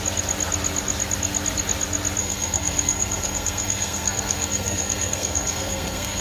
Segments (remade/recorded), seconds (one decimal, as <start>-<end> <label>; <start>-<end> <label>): 0.0-2.2 recorded; 2.2-6.2 remade